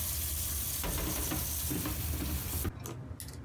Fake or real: real